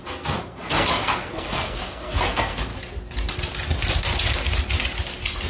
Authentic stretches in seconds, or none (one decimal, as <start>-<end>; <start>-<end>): 2.7-5.5